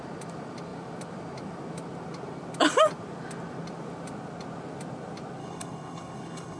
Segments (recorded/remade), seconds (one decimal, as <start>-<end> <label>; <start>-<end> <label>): 0.0-5.4 recorded; 5.4-6.6 remade